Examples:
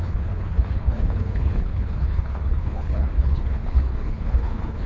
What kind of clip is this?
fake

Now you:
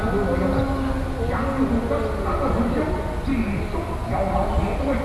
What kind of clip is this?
real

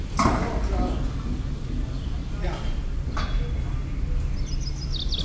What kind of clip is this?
real